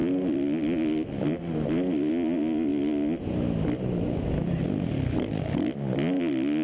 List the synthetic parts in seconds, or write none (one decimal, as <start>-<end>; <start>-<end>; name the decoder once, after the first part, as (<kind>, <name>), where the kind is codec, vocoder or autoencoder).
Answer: none